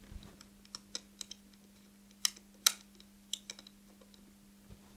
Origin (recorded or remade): recorded